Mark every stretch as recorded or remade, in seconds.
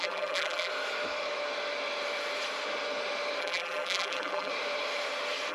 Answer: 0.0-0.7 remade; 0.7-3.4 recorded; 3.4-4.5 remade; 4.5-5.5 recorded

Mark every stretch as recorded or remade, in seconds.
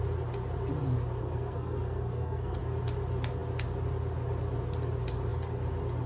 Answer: 0.0-1.2 recorded; 1.2-2.6 remade; 2.6-6.1 recorded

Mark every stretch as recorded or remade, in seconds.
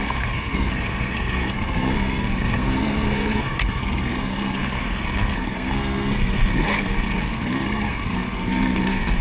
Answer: 0.0-9.2 remade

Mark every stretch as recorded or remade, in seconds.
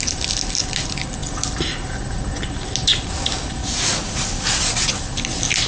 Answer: 0.0-3.6 recorded; 3.6-4.2 remade; 4.2-5.7 recorded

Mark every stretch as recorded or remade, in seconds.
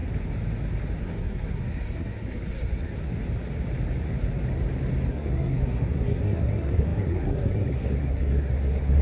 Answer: 0.0-1.0 recorded; 1.0-3.1 remade; 3.1-5.1 recorded; 5.1-9.0 remade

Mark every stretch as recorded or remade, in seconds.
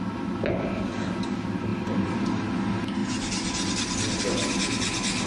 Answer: 0.0-1.7 recorded; 1.7-2.4 remade; 2.4-3.0 recorded; 3.0-4.2 remade; 4.2-5.3 recorded